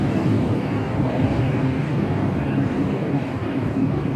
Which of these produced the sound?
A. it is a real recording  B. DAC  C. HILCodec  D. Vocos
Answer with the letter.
B